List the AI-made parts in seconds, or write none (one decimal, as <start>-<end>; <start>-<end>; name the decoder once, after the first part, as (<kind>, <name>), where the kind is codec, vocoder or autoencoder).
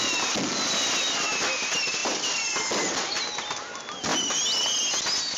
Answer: none